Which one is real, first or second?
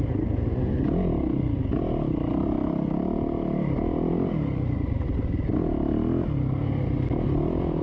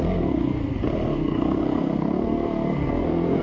first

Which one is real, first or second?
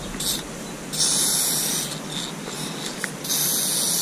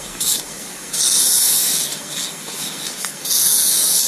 first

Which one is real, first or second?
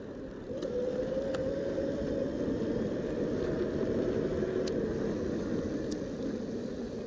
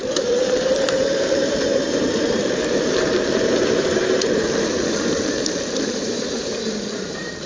first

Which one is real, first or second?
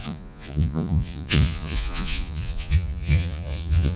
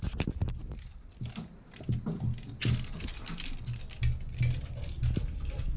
second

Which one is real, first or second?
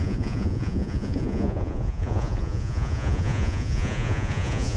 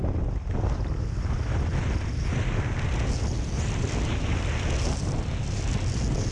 second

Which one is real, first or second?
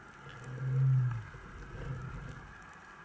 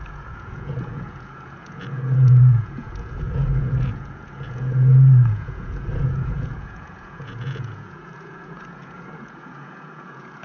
first